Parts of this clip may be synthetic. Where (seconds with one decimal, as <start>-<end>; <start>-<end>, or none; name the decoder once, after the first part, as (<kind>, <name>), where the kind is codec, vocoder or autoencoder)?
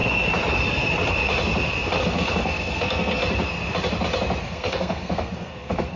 2.0-3.2 (codec, SNAC); 4.4-6.0